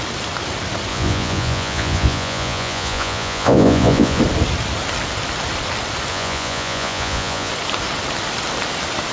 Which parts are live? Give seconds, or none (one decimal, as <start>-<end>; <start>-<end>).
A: 0.0-0.9; 4.2-6.1; 7.5-9.1